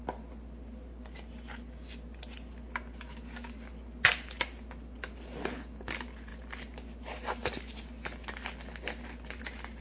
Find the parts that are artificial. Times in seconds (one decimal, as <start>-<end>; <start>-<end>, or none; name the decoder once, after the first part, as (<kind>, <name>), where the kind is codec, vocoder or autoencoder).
none